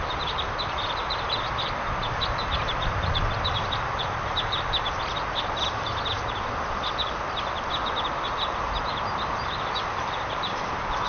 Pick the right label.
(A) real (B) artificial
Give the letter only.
A